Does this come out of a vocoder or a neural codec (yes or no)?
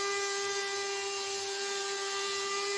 no